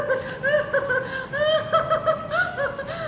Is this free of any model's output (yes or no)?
yes